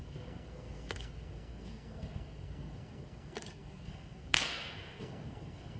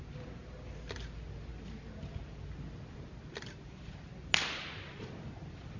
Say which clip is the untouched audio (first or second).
second